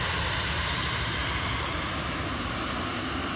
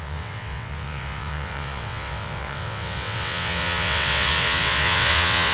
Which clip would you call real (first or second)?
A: first